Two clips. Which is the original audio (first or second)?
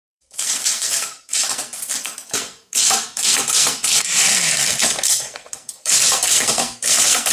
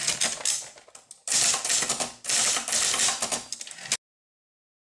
second